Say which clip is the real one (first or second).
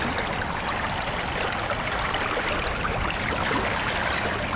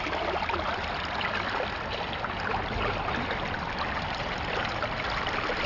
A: second